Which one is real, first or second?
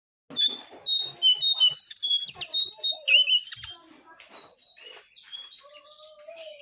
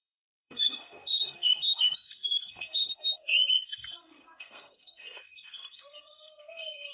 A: first